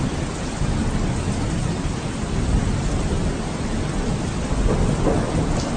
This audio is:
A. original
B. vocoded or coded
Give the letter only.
A